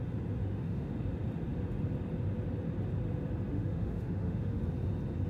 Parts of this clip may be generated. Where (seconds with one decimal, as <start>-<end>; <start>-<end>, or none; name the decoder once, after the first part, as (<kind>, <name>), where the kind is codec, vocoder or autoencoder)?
0.4-0.9 (autoencoder, DAC-VAE); 3.5-4.6